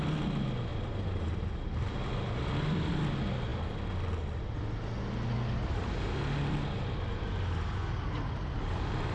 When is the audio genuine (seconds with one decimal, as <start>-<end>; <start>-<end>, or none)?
0.0-0.7; 2.1-9.1